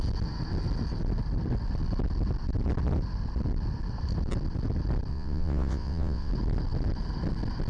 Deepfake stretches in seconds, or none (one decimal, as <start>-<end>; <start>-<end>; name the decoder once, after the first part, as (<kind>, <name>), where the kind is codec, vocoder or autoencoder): 5.1-6.3 (vocoder, WaveNeXt)